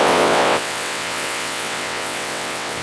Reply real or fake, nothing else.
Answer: fake